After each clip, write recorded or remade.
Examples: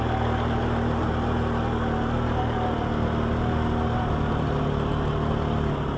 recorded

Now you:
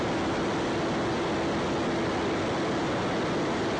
recorded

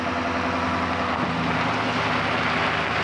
recorded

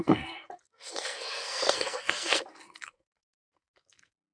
remade